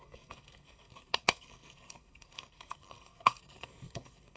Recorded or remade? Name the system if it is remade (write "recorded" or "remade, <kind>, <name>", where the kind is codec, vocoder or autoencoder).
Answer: remade, codec, SNAC